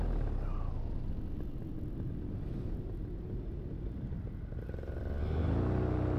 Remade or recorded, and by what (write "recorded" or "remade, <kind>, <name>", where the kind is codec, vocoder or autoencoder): recorded